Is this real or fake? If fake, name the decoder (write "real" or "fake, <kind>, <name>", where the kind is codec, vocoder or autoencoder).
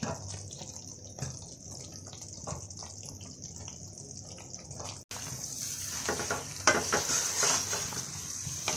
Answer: real